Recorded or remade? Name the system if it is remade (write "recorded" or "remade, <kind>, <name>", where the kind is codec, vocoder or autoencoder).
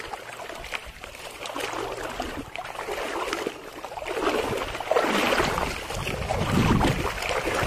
recorded